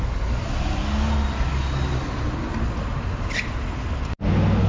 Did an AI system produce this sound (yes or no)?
no